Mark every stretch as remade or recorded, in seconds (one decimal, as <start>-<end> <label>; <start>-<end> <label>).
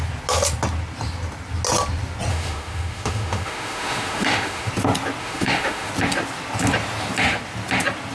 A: 0.0-2.3 recorded; 2.3-4.7 remade; 4.7-5.2 recorded; 5.2-5.9 remade; 5.9-8.1 recorded